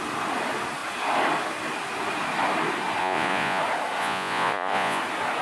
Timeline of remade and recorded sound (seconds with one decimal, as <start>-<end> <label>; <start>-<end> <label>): 0.0-3.0 recorded; 3.0-3.6 remade; 3.6-4.0 recorded; 4.0-5.0 remade; 5.0-5.4 recorded